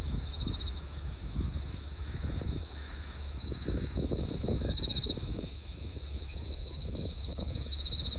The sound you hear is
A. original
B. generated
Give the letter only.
B